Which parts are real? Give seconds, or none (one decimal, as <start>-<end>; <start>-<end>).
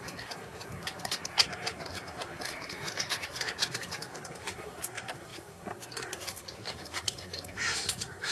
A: none